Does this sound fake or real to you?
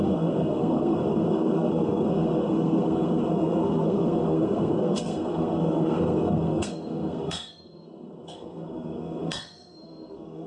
fake